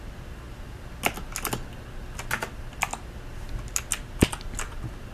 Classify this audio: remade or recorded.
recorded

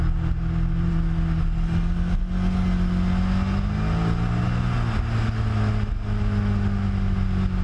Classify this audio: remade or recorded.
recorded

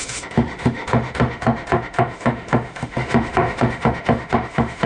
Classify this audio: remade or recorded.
remade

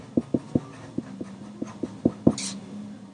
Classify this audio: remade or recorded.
recorded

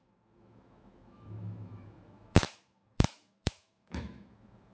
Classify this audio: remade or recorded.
remade